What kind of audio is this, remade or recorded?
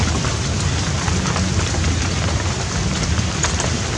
recorded